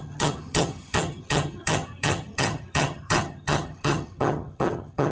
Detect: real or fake fake